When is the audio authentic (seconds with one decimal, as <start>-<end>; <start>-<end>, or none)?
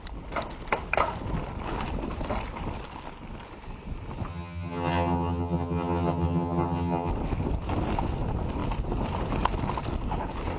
0.0-4.3; 7.1-10.6